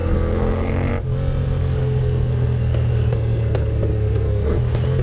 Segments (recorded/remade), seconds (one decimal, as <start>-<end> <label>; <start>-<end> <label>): 0.0-0.9 remade; 0.9-1.6 recorded; 1.6-4.6 remade; 4.6-5.0 recorded